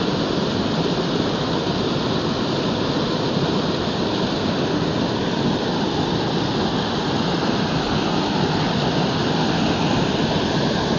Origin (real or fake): real